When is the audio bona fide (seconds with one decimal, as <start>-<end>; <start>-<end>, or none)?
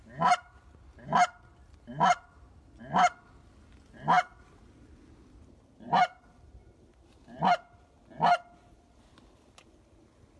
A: 0.0-10.4